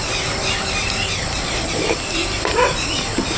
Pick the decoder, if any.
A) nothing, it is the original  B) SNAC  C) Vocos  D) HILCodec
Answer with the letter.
A